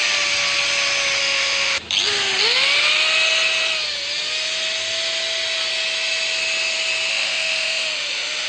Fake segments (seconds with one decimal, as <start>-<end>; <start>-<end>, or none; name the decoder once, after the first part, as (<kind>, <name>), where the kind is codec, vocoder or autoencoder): 1.2-1.8 (autoencoder, DAC-VAE); 7.1-8.5